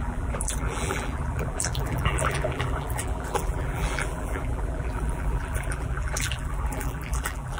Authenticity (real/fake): fake